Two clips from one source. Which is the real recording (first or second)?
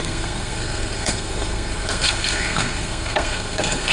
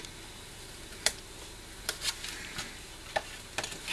second